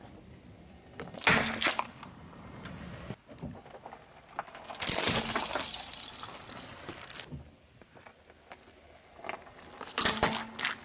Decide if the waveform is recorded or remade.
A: recorded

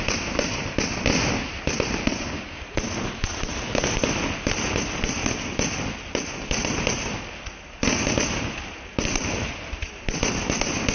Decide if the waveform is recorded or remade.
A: recorded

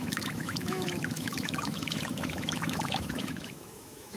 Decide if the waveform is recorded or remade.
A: remade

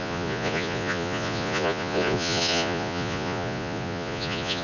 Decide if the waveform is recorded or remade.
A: remade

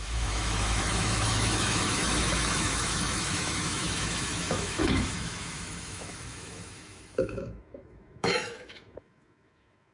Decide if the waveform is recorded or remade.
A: remade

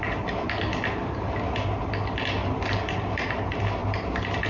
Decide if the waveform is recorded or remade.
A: recorded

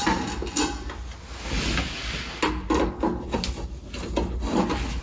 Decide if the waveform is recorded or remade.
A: recorded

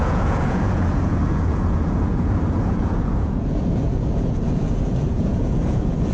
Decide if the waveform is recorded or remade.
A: remade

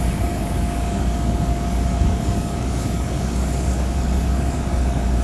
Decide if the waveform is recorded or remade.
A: remade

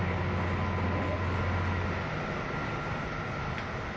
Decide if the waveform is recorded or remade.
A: recorded